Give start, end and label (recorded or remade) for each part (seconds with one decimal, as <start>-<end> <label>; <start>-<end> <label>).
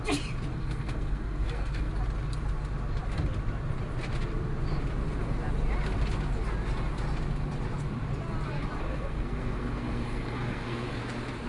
0.0-0.5 recorded; 0.5-1.9 remade; 1.9-8.8 recorded; 8.8-11.0 remade; 11.0-11.5 recorded